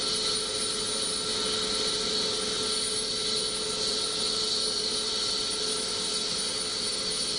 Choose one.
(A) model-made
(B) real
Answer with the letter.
B